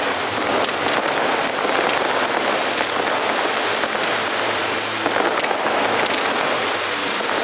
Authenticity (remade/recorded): recorded